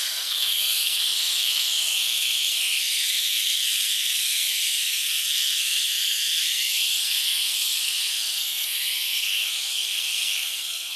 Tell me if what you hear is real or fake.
fake